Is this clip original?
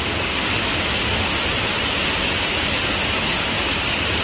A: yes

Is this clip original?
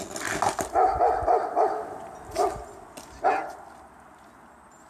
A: yes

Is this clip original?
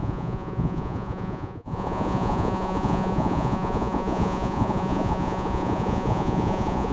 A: no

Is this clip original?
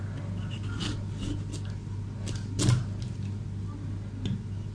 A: yes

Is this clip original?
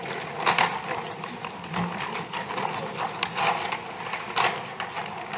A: yes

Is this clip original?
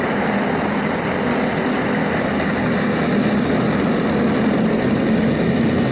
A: yes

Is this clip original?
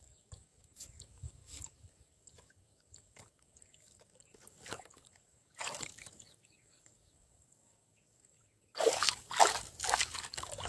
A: no